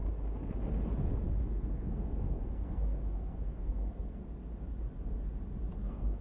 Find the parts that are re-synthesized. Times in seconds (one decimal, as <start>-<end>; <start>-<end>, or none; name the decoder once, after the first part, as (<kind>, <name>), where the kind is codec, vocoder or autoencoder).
1.4-4.2 (codec, SNAC); 5.8-6.2